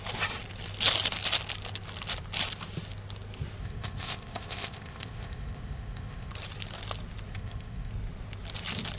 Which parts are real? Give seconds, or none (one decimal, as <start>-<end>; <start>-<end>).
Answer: 0.0-3.6; 6.3-7.3; 7.9-9.0